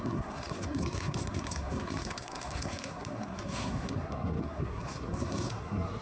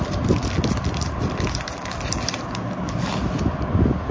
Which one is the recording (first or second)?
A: second